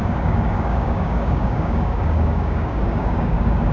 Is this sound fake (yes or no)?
yes